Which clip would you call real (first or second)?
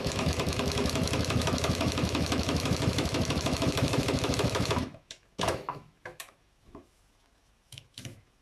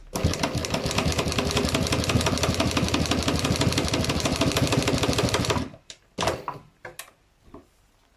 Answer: second